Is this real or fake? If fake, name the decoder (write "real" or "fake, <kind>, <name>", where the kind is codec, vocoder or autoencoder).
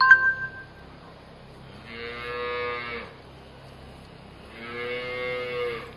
real